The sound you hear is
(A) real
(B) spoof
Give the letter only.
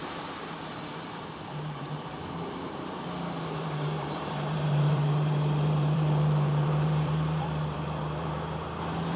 B